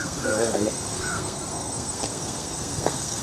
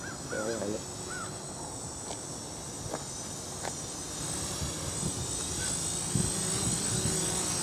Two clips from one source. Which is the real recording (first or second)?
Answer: second